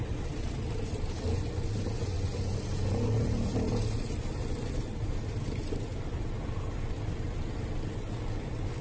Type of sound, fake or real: real